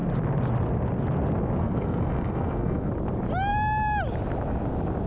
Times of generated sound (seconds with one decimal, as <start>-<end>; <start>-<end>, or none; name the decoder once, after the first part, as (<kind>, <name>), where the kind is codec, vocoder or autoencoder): 1.6-2.9 (codec, SNAC)